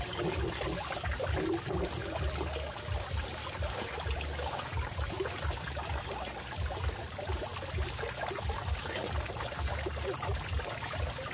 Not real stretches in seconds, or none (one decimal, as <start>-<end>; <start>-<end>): none